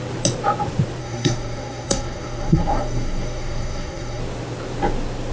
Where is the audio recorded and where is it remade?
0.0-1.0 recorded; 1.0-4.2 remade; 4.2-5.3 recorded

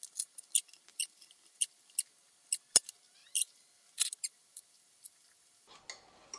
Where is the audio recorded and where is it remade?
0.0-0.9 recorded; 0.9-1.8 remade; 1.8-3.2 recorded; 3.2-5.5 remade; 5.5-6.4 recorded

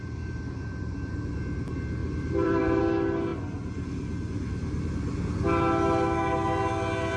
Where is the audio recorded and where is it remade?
0.0-2.0 recorded; 2.0-2.8 remade; 2.8-7.2 recorded